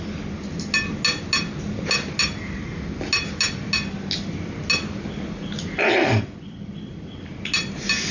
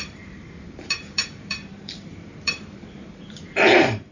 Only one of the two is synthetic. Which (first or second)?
second